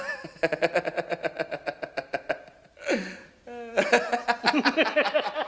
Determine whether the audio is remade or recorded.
recorded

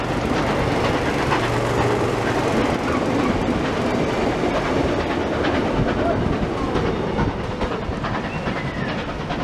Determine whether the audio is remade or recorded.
recorded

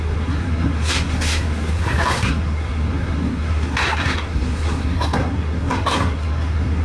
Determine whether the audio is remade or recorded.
remade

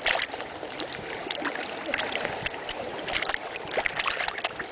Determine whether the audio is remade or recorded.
recorded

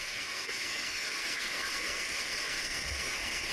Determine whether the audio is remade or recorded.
remade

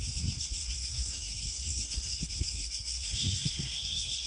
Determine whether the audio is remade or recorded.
remade